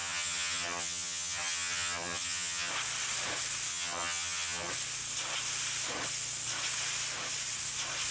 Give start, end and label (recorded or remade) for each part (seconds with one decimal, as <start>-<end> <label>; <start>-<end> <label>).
0.0-2.7 remade; 2.7-3.7 recorded; 3.7-4.7 remade; 4.7-8.1 recorded

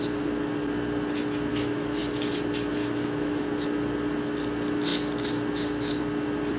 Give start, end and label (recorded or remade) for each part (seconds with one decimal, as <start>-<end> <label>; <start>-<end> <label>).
0.0-1.5 recorded; 1.5-2.0 remade; 2.0-2.8 recorded; 2.8-3.4 remade; 3.4-6.6 recorded